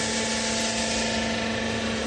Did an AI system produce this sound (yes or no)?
no